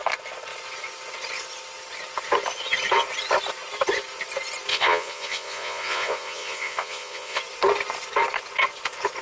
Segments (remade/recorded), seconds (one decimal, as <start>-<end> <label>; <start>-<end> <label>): 0.0-4.7 recorded; 4.7-7.4 remade; 7.4-9.2 recorded